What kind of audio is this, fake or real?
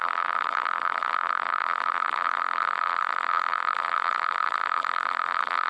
fake